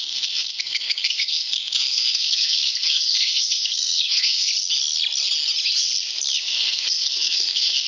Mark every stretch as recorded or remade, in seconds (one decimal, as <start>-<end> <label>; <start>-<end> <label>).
0.0-4.5 remade; 4.5-6.4 recorded; 6.4-7.9 remade